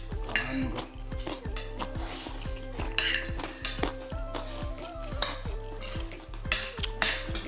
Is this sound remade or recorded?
recorded